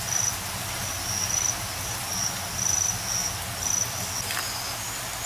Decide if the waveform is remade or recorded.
recorded